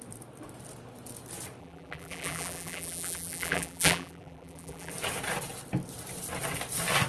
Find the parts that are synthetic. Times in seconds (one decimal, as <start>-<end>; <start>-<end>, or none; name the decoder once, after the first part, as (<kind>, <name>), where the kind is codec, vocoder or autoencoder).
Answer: 1.6-4.9 (vocoder, BigVGAN v2)